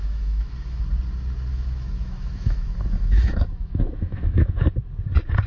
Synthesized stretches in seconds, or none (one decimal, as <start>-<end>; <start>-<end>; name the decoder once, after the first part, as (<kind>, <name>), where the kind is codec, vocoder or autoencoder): 0.0-0.8 (autoencoder, DAC-VAE); 1.5-4.8

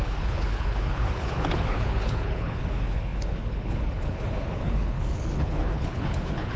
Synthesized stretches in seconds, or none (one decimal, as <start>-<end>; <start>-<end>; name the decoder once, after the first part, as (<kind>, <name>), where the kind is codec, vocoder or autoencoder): 0.0-6.6 (codec, HILCodec)

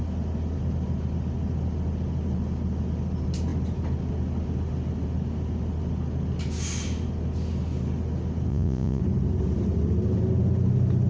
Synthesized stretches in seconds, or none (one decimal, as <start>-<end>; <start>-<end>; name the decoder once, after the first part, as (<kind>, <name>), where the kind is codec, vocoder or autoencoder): 8.5-9.0 (vocoder, Vocos)